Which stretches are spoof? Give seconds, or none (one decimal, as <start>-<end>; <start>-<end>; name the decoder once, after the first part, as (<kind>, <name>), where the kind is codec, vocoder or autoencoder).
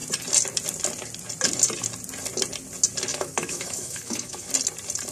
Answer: 3.1-4.5 (autoencoder, DAC-VAE)